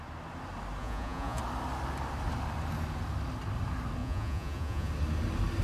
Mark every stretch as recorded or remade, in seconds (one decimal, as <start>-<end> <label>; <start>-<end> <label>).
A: 0.0-0.8 recorded; 0.8-1.4 remade; 1.4-4.0 recorded; 4.0-4.9 remade; 4.9-5.6 recorded